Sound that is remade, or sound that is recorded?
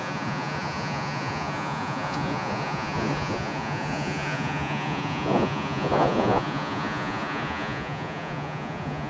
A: remade